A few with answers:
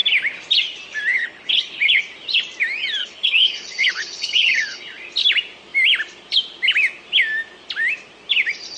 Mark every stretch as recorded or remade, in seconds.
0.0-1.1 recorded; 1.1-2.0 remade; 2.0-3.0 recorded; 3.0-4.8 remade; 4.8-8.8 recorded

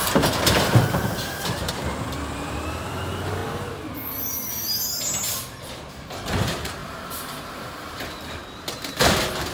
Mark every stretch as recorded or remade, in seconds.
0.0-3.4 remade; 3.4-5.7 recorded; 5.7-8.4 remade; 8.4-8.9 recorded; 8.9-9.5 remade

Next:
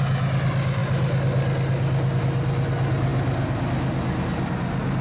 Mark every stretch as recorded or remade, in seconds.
0.0-5.0 recorded